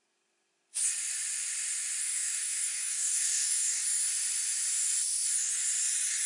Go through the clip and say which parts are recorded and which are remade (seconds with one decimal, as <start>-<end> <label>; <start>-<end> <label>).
0.0-2.0 recorded; 2.0-3.8 remade; 3.8-6.3 recorded